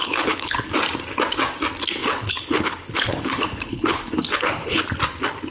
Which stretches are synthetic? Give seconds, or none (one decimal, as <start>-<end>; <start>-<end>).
0.0-0.7; 2.0-4.8